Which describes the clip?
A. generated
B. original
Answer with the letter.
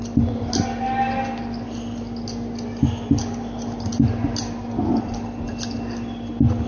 B